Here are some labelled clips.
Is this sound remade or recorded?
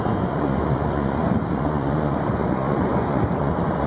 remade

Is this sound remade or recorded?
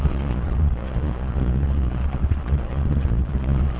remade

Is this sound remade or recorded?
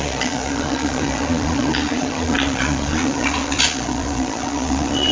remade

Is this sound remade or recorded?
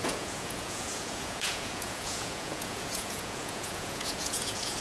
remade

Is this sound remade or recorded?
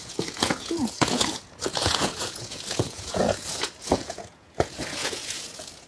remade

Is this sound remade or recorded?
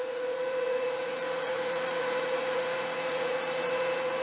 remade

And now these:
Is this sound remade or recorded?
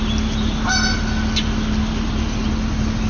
recorded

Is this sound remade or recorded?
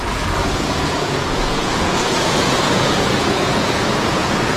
remade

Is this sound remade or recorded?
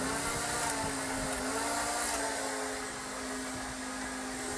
recorded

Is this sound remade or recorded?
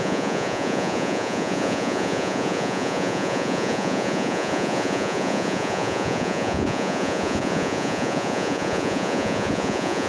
remade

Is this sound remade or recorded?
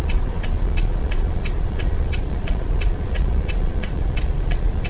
remade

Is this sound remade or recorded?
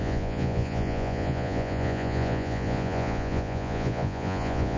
remade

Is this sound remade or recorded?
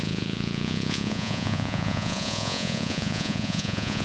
remade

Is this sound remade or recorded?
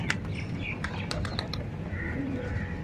recorded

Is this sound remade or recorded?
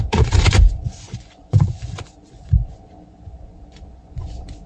remade